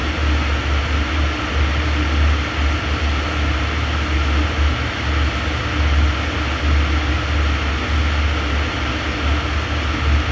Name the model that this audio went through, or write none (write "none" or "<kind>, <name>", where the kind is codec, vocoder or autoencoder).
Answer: none